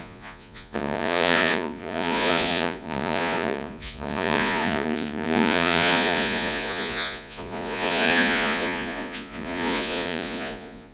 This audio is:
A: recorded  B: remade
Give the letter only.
B